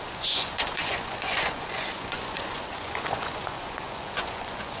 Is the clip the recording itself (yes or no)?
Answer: no